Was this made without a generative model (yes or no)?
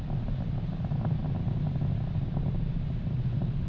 yes